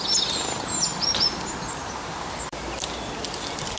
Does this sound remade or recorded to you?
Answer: recorded